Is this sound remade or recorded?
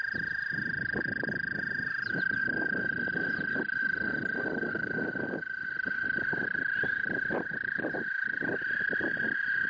recorded